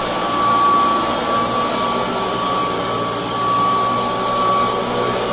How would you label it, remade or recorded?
recorded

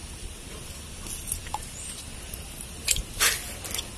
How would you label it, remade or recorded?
recorded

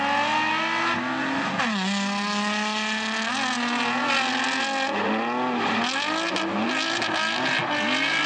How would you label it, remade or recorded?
recorded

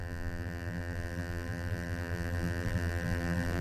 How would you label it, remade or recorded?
remade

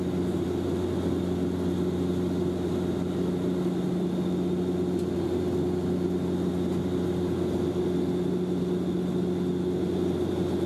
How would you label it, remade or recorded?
recorded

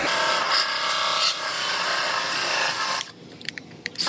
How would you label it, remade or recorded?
remade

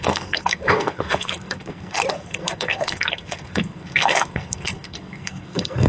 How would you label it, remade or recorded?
remade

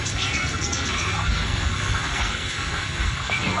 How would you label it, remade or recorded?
remade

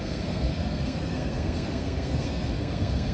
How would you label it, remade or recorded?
remade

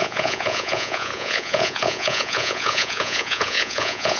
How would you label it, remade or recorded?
remade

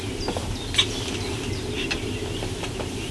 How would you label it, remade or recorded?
recorded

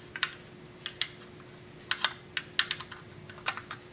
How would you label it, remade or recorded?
recorded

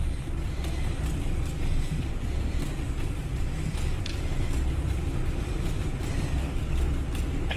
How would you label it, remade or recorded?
recorded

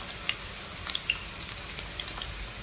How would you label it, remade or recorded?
recorded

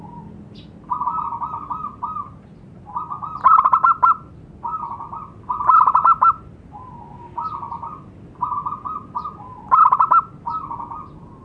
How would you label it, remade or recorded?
recorded